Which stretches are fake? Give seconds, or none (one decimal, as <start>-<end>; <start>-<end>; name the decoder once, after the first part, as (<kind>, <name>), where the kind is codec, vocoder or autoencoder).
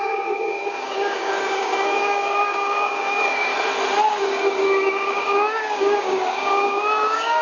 0.0-3.5 (codec, DAC); 4.1-7.4